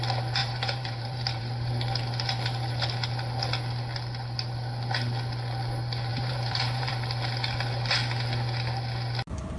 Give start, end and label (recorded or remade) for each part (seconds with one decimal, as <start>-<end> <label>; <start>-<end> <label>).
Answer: 0.0-0.4 recorded; 0.4-1.7 remade; 1.7-6.1 recorded; 6.1-6.9 remade; 6.9-9.6 recorded